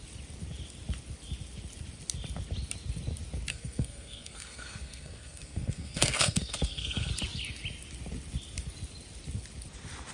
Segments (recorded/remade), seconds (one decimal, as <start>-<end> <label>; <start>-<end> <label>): 0.0-3.5 recorded; 3.5-7.1 remade; 7.1-10.1 recorded